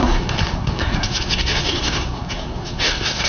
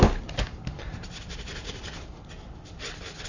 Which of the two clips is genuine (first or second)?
second